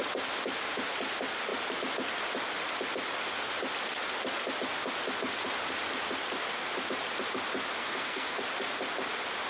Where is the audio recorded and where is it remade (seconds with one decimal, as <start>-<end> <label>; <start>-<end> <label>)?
0.0-7.8 recorded; 7.8-8.4 remade; 8.4-9.5 recorded